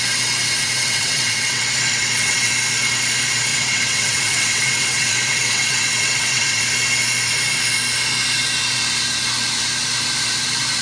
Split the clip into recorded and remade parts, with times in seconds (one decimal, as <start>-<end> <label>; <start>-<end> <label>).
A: 0.0-0.6 recorded; 0.6-2.5 remade; 2.5-3.5 recorded; 3.5-6.6 remade; 6.6-10.8 recorded